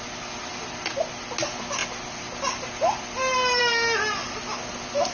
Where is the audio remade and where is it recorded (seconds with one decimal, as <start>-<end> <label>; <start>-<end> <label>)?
0.0-5.1 recorded